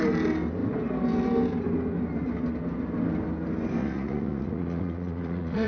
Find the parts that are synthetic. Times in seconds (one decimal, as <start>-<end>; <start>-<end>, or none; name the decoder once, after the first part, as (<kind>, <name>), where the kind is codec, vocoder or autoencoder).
3.8-5.7 (vocoder, Vocos)